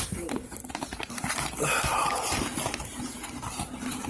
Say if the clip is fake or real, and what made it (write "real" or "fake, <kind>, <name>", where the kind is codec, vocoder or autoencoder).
real